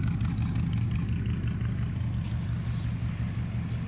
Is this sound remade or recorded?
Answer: recorded